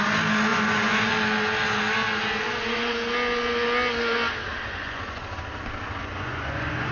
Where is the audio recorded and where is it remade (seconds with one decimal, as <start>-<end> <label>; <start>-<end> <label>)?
0.0-0.5 recorded; 0.5-1.1 remade; 1.1-4.7 recorded; 4.7-5.2 remade; 5.2-6.0 recorded; 6.0-6.9 remade